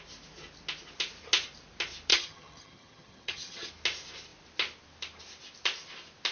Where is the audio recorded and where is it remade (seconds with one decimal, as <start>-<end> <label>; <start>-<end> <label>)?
0.0-2.1 recorded; 2.1-3.7 remade; 3.7-6.3 recorded

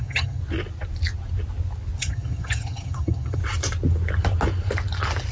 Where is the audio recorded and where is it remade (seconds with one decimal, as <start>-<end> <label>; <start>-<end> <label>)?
0.0-0.4 remade; 0.4-2.0 recorded; 2.0-3.4 remade; 3.4-5.3 recorded

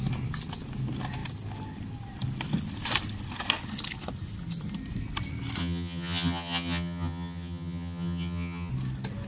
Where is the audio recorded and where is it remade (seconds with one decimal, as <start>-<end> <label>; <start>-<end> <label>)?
0.0-5.6 recorded; 5.6-8.7 remade; 8.7-9.3 recorded

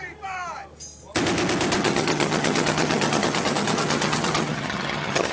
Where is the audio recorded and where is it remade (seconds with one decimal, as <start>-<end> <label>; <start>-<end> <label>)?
0.0-1.8 recorded; 1.8-5.3 remade

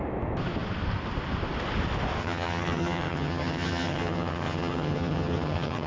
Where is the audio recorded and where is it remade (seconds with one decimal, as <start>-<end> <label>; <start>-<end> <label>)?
0.0-2.2 recorded; 2.2-5.9 remade

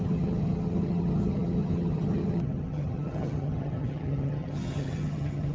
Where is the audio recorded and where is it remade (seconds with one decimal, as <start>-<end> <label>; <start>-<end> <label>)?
0.0-5.5 remade

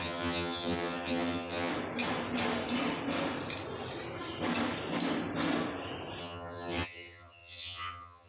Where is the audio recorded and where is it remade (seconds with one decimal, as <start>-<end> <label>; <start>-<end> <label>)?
0.0-1.7 remade; 1.7-6.2 recorded; 6.2-8.3 remade